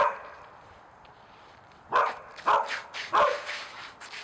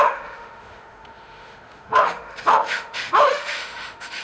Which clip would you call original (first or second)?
first